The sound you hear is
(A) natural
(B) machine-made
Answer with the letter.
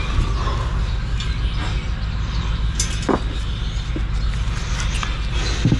A